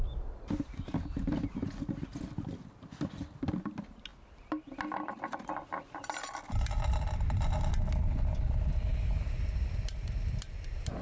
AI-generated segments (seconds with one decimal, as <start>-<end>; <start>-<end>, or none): none